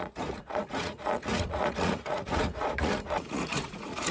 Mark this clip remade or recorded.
remade